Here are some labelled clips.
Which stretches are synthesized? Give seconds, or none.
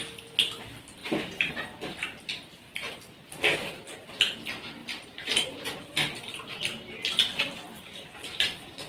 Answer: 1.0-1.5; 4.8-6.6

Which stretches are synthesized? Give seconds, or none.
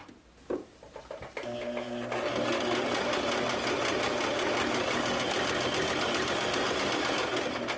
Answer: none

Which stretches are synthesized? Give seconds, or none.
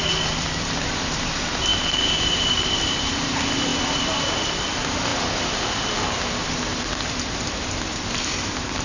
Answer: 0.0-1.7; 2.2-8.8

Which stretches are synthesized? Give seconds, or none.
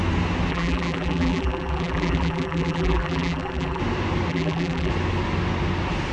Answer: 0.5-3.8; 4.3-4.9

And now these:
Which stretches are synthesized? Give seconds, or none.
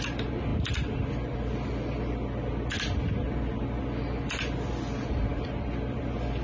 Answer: 5.3-6.0